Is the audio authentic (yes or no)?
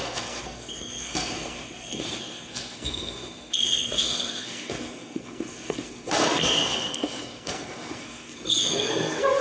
no